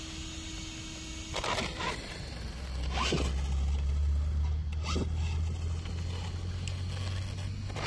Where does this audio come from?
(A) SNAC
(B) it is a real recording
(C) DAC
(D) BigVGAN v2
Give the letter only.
B